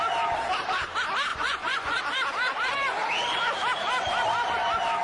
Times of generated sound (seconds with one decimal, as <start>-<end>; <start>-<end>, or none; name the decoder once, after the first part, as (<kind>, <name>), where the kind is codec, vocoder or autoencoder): 1.3-2.0 (vocoder, Vocos)